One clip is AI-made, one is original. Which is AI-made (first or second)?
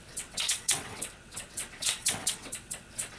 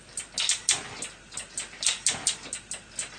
first